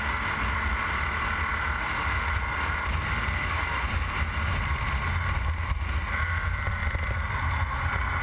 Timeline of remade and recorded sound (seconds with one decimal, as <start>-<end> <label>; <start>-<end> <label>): 0.0-6.8 recorded; 6.8-7.4 remade; 7.4-8.2 recorded